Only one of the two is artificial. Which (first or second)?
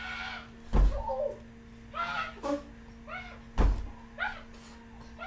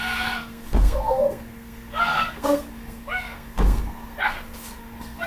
second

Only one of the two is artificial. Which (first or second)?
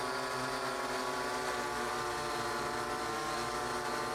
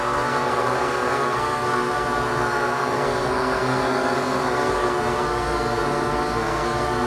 second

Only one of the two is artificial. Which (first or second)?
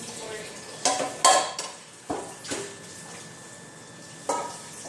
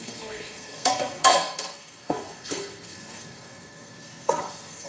second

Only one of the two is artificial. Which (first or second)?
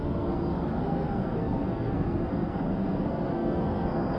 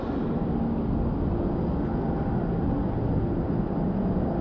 first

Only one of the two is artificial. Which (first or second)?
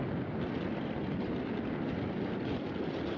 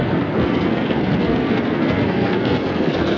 second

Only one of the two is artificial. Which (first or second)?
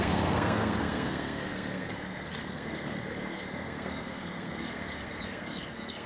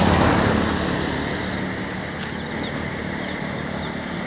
first